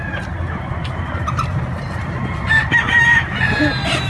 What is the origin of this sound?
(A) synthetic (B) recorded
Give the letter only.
A